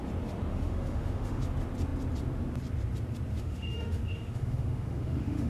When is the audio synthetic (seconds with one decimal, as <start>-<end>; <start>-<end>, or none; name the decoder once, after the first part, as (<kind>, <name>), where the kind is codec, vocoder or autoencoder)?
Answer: 0.5-1.4 (autoencoder, DAC-VAE); 3.3-5.5